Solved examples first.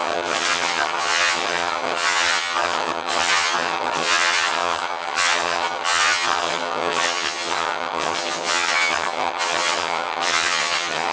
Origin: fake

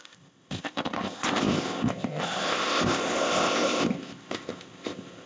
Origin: fake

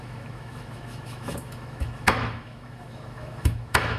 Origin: fake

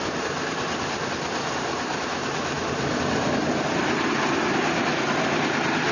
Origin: real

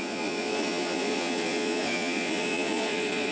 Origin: fake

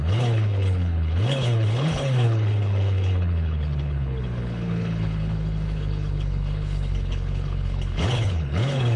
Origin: fake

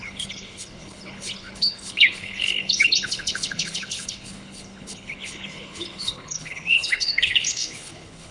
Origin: fake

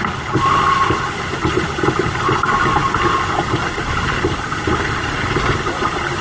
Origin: real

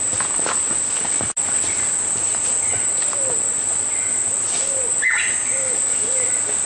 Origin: real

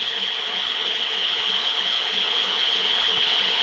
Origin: fake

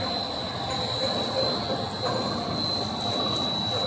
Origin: real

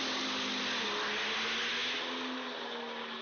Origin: real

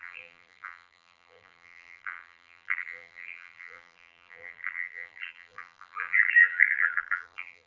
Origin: fake